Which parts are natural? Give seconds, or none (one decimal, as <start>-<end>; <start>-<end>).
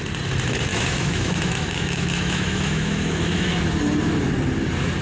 0.0-0.7; 3.6-5.0